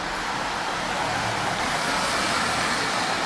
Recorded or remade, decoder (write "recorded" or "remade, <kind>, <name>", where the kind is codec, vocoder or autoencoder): recorded